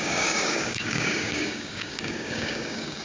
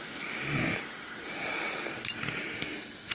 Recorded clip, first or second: second